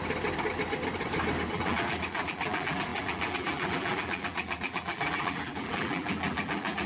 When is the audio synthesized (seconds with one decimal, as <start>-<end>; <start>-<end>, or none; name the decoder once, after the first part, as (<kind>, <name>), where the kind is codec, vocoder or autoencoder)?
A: 1.5-6.9 (vocoder, BigVGAN v2)